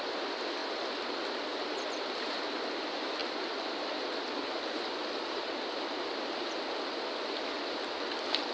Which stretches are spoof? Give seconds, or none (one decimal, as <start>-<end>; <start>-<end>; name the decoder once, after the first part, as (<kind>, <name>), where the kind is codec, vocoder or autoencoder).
none